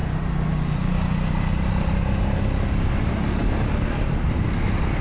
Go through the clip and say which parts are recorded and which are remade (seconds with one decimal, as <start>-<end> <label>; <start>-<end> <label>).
0.0-5.0 recorded